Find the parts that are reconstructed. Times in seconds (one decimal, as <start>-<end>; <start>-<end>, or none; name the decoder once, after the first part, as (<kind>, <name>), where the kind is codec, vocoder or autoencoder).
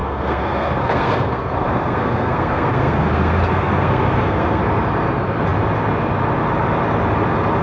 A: 0.0-4.6 (codec, SNAC)